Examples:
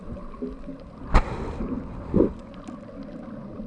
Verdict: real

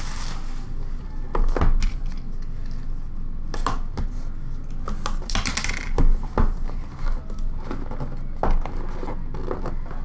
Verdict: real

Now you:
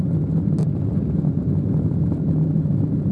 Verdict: real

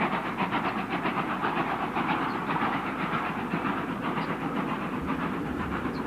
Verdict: fake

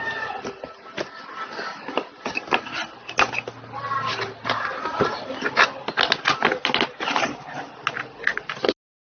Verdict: real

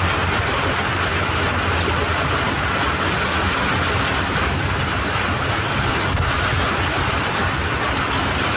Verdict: real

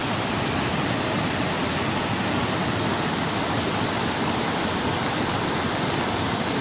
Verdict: real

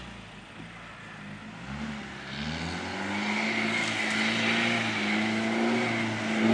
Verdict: real